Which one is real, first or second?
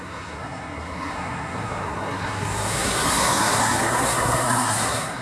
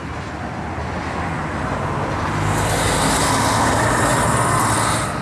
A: second